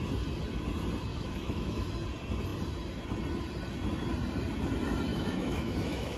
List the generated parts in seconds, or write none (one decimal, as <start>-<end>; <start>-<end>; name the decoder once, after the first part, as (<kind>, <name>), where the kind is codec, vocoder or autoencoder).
1.1-1.9 (autoencoder, DAC-VAE); 5.1-6.2